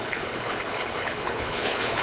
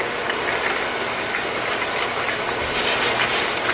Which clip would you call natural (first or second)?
second